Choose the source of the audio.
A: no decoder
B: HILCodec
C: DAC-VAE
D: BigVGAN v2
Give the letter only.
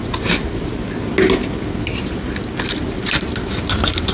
A